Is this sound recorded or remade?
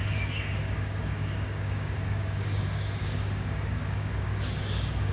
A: remade